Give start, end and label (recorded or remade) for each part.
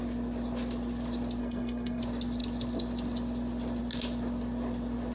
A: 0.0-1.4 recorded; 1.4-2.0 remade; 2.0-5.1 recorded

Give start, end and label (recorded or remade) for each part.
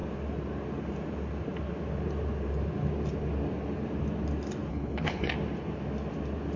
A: 0.0-4.7 recorded; 4.7-5.3 remade; 5.3-6.6 recorded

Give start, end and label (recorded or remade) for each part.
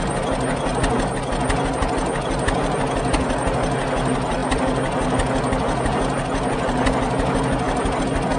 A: 0.0-8.4 recorded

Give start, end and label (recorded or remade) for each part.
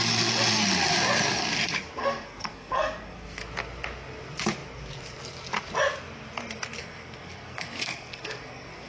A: 0.0-2.0 recorded; 2.0-3.4 remade; 3.4-6.8 recorded; 6.8-8.9 remade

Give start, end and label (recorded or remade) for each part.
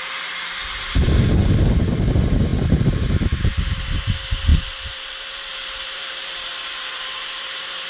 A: 0.0-7.9 remade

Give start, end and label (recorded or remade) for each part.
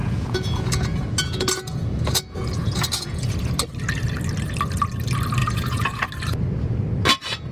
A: 0.0-3.3 remade; 3.3-5.4 recorded; 5.4-6.1 remade; 6.1-7.5 recorded